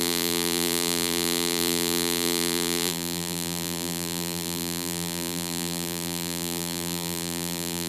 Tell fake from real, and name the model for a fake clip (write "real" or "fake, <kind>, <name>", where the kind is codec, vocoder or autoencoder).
fake, vocoder, BigVGAN v2